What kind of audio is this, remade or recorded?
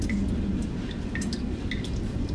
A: recorded